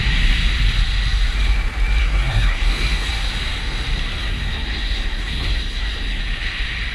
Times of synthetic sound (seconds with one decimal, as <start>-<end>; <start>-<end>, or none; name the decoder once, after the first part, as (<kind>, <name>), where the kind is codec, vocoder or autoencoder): 2.0-3.1 (codec, SNAC); 4.2-6.2